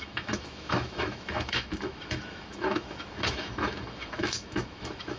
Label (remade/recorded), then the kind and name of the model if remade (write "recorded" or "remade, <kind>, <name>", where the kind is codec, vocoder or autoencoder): remade, autoencoder, DAC-VAE